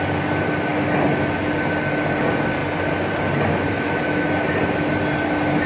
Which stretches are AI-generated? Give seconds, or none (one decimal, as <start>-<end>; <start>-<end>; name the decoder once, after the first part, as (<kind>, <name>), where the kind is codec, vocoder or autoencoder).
none